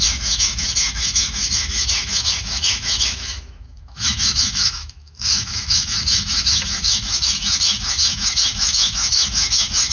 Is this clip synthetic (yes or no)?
yes